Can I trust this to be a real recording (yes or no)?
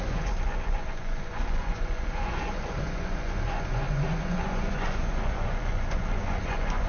no